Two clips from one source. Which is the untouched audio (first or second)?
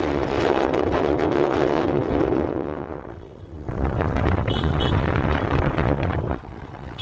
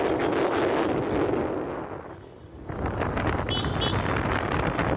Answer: second